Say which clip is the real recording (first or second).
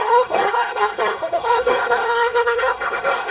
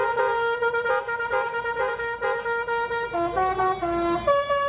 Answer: second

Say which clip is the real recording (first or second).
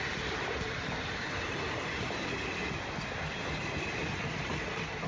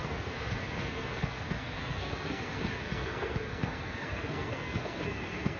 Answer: first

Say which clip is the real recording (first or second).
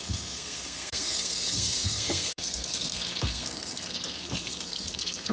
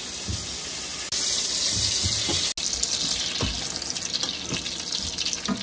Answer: second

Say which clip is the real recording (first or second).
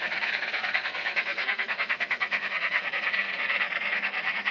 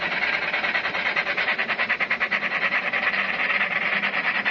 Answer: second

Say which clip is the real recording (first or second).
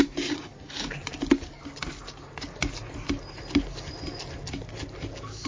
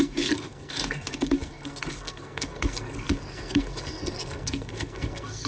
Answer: first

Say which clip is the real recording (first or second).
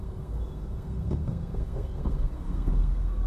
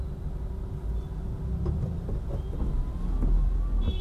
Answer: second